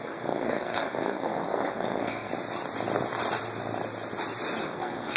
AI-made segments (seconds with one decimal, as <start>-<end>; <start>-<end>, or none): 0.0-2.3; 4.6-5.2